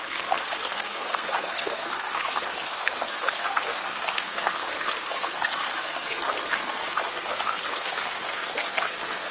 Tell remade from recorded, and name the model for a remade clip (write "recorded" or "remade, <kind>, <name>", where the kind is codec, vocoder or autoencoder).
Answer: remade, codec, SNAC